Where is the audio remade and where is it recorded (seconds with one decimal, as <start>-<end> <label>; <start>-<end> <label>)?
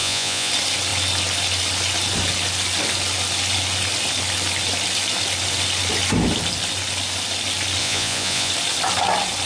0.0-0.5 remade; 0.5-7.8 recorded; 7.8-8.5 remade; 8.5-9.5 recorded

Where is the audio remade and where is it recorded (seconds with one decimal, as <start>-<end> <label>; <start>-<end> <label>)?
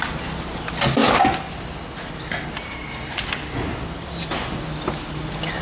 0.0-5.6 recorded